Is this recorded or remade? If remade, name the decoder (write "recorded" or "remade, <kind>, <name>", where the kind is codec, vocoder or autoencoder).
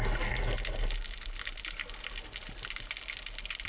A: recorded